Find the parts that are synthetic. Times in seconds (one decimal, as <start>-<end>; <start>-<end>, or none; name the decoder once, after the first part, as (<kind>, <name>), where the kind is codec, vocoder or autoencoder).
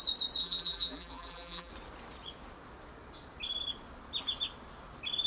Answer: 0.4-1.7 (vocoder, BigVGAN v2)